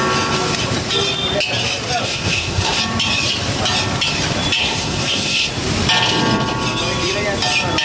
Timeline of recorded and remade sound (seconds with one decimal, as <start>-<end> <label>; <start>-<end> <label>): 0.0-2.0 recorded; 2.0-2.8 remade; 2.8-4.6 recorded; 4.6-5.5 remade; 5.5-7.8 recorded